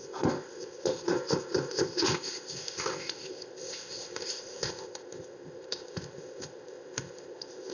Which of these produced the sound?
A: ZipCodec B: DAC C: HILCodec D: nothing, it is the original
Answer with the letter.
A